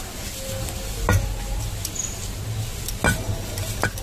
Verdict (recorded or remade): recorded